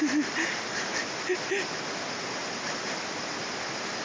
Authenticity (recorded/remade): recorded